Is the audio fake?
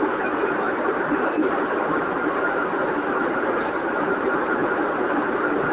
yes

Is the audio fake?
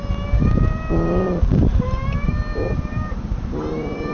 no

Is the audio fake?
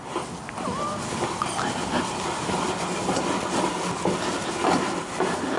no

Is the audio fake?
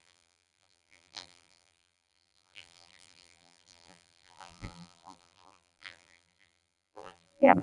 yes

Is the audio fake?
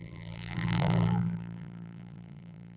yes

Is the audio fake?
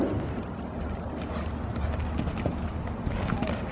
no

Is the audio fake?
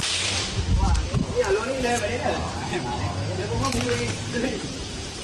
yes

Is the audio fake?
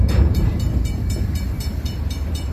yes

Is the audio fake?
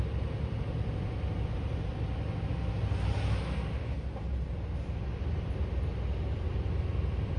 no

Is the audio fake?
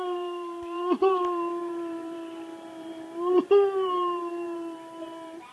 yes